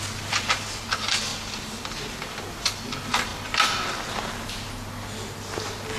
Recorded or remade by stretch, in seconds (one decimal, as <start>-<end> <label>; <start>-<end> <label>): 0.0-6.0 recorded

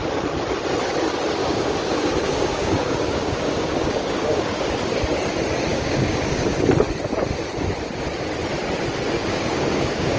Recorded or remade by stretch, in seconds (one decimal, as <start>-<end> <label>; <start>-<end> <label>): 0.0-1.4 recorded; 1.4-4.7 remade; 4.7-5.7 recorded; 5.7-6.6 remade; 6.6-9.2 recorded; 9.2-10.2 remade

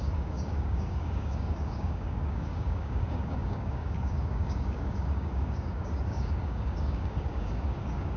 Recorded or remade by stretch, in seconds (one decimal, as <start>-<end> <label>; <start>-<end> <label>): 0.0-8.2 remade

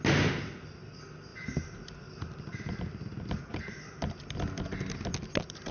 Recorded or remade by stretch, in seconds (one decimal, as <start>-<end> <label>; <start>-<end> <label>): 0.0-5.7 recorded

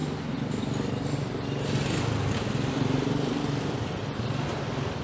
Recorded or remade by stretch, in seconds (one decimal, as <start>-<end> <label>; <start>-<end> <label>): 0.0-5.0 recorded

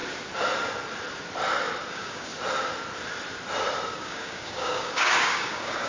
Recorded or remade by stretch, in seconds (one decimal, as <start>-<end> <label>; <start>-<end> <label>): 0.0-1.9 recorded; 1.9-2.3 remade; 2.3-3.9 recorded; 3.9-5.9 remade